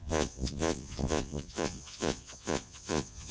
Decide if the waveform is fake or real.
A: fake